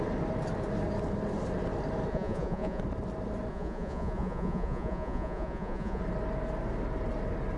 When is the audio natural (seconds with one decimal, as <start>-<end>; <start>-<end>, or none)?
0.0-2.1; 2.8-3.5; 6.0-7.6